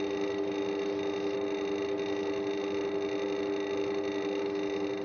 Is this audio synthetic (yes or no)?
no